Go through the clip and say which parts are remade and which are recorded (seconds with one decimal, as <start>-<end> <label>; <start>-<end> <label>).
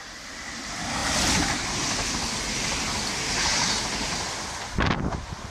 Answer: 0.0-5.5 recorded